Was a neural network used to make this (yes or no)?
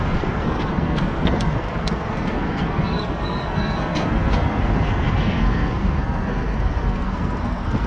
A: yes